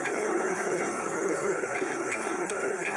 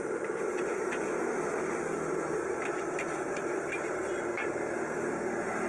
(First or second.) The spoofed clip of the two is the first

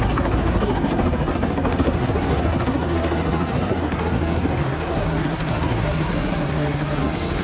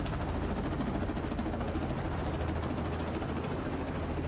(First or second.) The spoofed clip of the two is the first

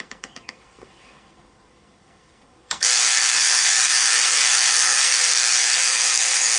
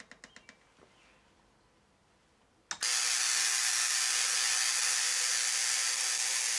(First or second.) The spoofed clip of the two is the first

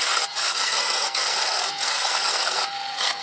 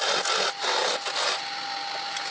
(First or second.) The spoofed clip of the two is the first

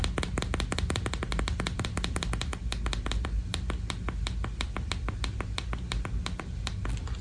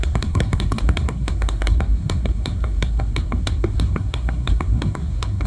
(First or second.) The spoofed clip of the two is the second